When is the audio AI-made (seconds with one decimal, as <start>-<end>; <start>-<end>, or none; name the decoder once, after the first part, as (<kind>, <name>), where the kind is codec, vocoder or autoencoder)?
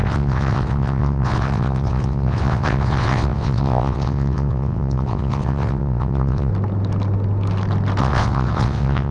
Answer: 0.0-6.5 (vocoder, WaveNeXt); 8.0-9.1